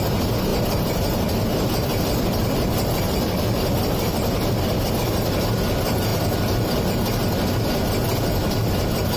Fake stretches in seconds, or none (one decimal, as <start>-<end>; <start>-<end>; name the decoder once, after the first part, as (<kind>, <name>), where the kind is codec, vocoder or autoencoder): 0.5-4.9 (vocoder, BigVGAN v2); 6.1-6.9; 8.4-9.2